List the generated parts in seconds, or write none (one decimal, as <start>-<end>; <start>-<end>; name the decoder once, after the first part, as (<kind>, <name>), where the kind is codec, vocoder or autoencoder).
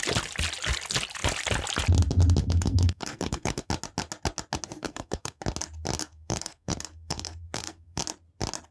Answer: 2.4-3.7 (codec, SNAC); 4.8-5.4; 6.0-8.0